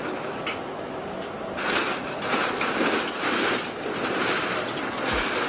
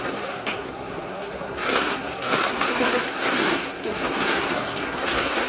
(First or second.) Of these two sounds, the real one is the first